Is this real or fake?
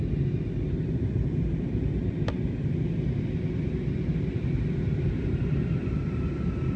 real